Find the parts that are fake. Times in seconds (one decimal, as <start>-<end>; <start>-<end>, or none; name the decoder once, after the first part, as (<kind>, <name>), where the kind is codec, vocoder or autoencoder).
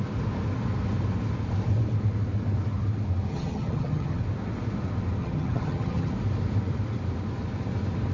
3.3-4.2 (vocoder, HiFi-GAN); 5.2-6.1